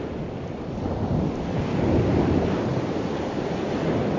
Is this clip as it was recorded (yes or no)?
yes